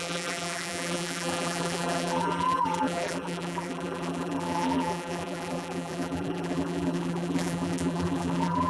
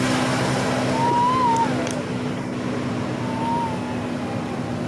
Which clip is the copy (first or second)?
first